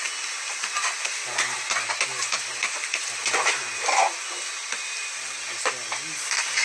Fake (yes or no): no